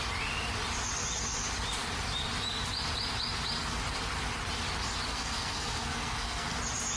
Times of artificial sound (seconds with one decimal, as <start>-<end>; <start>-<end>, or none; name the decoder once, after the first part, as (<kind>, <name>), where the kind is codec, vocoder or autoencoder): 5.1-6.6 (codec, SNAC)